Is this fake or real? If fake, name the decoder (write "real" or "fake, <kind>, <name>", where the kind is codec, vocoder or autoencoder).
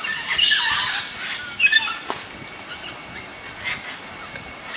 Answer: real